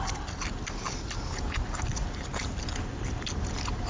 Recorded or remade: recorded